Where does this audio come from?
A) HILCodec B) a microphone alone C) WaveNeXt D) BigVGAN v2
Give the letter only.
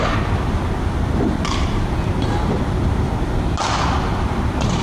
B